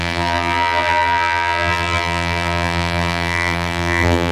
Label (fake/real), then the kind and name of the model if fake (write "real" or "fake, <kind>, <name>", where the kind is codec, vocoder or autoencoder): fake, vocoder, BigVGAN v2